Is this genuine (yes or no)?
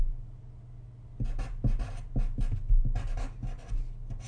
yes